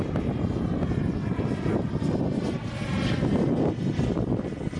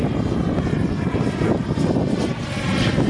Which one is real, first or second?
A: first